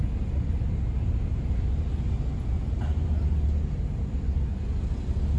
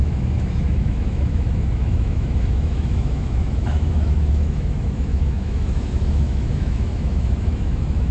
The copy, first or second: second